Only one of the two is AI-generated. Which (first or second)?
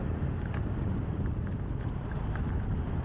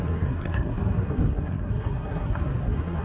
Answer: second